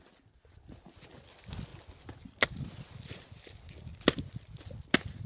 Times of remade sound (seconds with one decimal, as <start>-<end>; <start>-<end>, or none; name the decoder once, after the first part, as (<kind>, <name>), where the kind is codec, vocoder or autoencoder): none